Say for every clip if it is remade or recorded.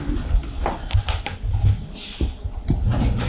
recorded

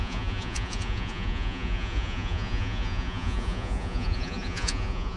remade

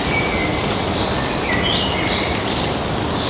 recorded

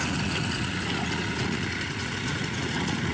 remade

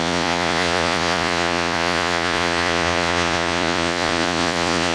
remade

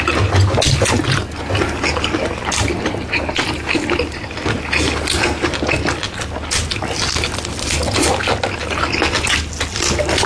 recorded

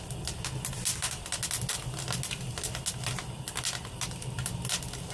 recorded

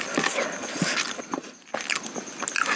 recorded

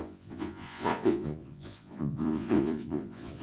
remade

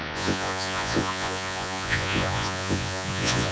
remade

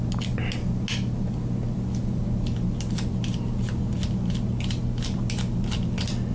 recorded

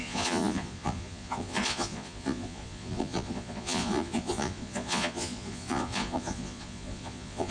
remade